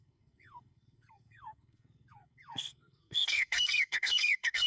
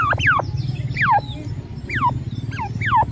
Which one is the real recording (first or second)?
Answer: second